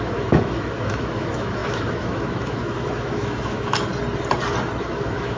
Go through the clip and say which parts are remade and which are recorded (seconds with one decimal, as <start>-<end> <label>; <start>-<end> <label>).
0.0-3.9 remade; 3.9-4.8 recorded; 4.8-5.4 remade